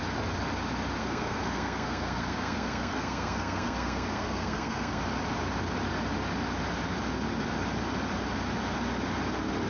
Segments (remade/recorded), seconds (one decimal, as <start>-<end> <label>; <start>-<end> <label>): 0.0-1.0 recorded; 1.0-5.0 remade; 5.0-9.7 recorded

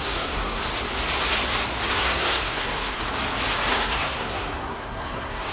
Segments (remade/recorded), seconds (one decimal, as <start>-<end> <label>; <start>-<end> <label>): 0.0-0.6 remade; 0.6-1.9 recorded; 1.9-3.0 remade; 3.0-3.7 recorded; 3.7-5.5 remade

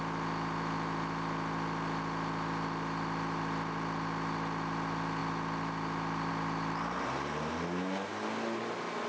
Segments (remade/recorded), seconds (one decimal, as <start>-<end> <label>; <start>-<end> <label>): 0.0-9.1 recorded

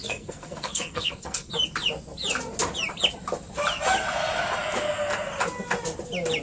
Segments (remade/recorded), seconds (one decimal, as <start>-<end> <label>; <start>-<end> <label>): 0.0-1.5 remade; 1.5-6.4 recorded

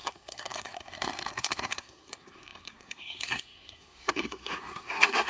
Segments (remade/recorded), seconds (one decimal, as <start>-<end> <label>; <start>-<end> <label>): 0.0-5.3 remade